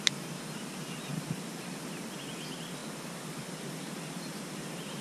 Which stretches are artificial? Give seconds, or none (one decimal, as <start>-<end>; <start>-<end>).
1.1-2.2; 2.8-5.0